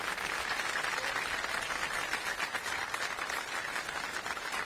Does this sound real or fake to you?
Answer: real